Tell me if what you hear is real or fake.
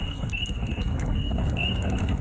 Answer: fake